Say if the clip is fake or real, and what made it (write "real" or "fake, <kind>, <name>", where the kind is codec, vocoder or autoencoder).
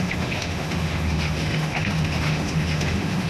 fake, autoencoder, DAC-VAE